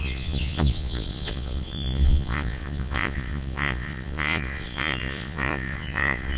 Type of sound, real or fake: fake